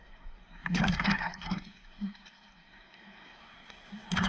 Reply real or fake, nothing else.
fake